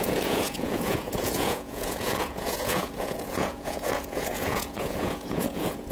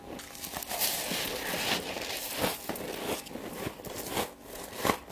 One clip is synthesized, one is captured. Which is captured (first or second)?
second